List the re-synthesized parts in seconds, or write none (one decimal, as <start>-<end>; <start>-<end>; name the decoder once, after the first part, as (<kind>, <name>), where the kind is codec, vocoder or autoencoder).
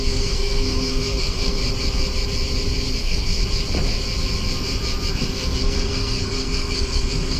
0.0-1.6 (codec, SNAC); 3.0-3.4; 5.1-7.4